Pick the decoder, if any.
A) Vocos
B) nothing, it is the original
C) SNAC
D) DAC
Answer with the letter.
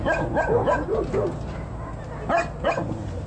B